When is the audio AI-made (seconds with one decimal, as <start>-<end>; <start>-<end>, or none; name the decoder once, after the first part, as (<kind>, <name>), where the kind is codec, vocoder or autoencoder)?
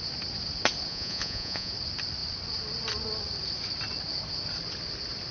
0.9-1.7 (vocoder, Vocos)